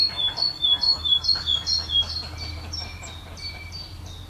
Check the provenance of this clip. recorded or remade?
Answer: recorded